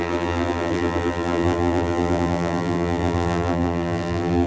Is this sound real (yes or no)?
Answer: no